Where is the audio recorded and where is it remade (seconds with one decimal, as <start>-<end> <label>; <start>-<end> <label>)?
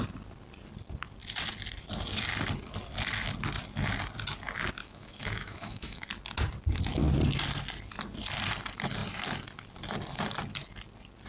0.0-4.8 recorded; 4.8-6.1 remade; 6.1-11.3 recorded